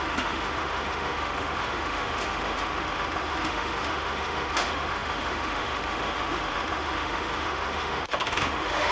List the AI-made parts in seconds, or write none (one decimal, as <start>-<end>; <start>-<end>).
0.0-8.9